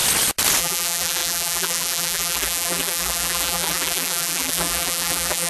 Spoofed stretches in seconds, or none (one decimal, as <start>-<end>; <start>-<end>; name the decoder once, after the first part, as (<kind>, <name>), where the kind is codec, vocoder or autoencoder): 0.6-5.5 (vocoder, BigVGAN v2)